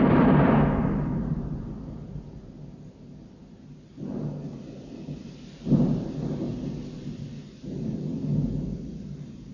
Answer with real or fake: real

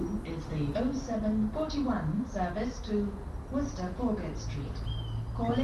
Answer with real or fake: real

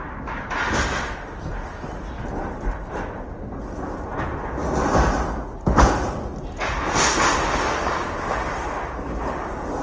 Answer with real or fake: real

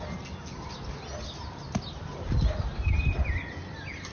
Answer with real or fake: real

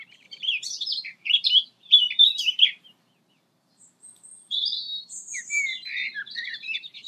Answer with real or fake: fake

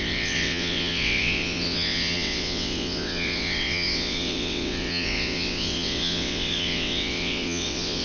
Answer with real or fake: fake